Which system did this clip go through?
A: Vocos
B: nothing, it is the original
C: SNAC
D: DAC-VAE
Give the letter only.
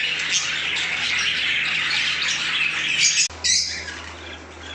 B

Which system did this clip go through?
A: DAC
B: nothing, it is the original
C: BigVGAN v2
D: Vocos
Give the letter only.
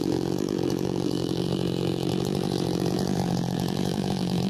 C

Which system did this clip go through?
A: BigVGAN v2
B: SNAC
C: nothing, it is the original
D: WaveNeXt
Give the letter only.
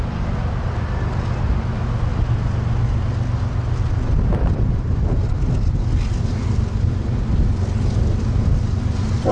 C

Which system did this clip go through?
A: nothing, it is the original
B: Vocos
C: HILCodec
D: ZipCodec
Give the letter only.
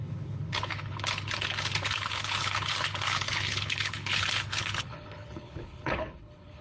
C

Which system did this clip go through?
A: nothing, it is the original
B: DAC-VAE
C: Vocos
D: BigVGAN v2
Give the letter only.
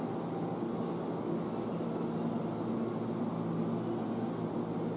A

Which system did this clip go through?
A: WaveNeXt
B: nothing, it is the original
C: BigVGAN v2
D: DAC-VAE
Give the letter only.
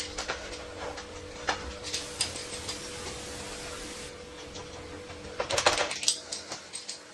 B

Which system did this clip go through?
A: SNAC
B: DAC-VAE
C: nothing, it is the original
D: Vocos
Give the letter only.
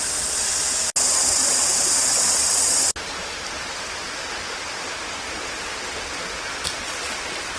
C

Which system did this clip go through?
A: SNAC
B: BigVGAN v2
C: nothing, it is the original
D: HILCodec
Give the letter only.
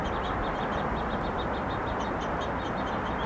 C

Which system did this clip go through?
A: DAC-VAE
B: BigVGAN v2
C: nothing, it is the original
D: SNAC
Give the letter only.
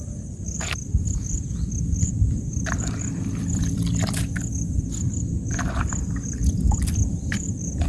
B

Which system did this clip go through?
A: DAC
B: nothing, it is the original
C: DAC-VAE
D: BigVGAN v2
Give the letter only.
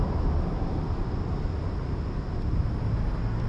B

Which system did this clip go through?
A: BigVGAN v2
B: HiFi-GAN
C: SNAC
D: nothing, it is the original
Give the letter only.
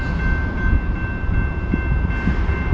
D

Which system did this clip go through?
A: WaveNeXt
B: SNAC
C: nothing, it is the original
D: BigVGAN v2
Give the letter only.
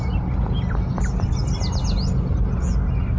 C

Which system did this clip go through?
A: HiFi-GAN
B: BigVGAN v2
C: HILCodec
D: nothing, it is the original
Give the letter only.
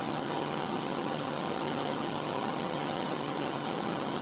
A